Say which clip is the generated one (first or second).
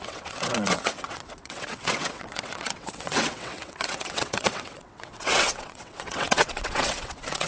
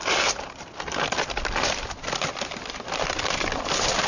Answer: first